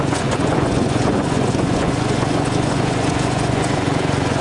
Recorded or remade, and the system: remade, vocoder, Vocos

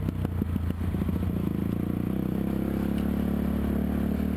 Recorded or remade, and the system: recorded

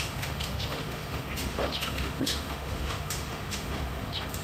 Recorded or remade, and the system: remade, autoencoder, DAC-VAE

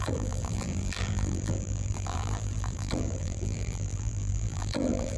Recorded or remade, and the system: remade, vocoder, BigVGAN v2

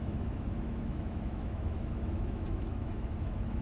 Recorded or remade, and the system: remade, autoencoder, DAC-VAE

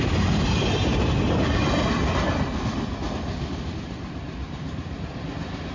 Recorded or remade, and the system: recorded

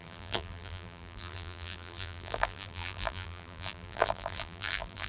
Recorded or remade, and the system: remade, vocoder, BigVGAN v2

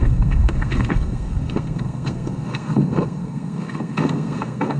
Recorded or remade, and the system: remade, codec, SNAC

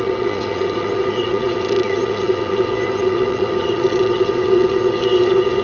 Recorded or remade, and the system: remade, vocoder, WaveNeXt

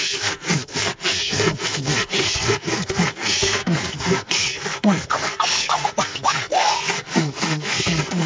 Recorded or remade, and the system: remade, codec, SNAC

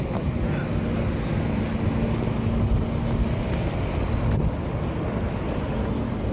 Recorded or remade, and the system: recorded